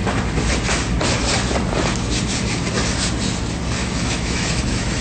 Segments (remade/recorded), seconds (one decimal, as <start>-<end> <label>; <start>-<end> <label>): 0.0-3.8 recorded; 3.8-5.0 remade